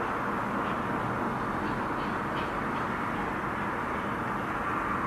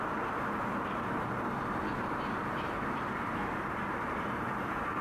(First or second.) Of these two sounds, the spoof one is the second